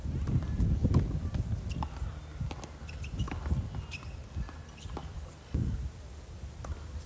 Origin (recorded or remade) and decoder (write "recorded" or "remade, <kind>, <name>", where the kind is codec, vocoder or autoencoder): recorded